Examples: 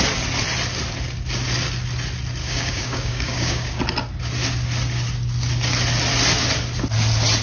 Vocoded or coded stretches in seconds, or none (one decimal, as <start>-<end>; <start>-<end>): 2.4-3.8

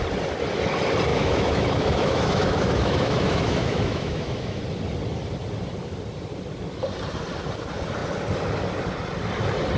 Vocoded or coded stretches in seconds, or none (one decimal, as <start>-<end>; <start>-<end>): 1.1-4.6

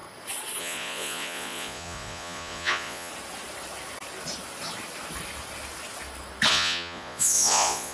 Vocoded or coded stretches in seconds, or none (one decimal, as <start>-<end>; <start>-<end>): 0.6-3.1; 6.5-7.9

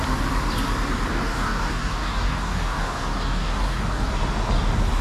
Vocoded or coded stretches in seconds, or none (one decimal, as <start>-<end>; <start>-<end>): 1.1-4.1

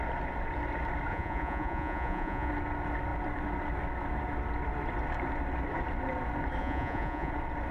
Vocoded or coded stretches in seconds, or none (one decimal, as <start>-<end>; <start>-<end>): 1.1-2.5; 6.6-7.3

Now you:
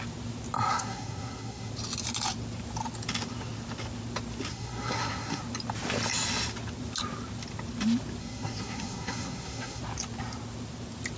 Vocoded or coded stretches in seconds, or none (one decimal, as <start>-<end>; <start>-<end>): 0.7-1.7; 4.5-5.4; 8.2-9.8